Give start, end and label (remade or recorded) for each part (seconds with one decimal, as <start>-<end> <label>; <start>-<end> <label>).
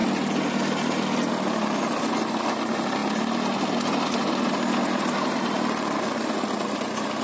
0.0-7.2 recorded